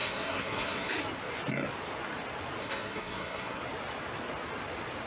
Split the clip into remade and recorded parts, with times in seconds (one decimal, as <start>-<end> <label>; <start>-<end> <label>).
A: 0.0-0.9 remade; 0.9-2.6 recorded; 2.6-3.6 remade; 3.6-5.1 recorded